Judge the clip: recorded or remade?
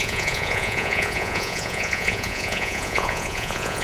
remade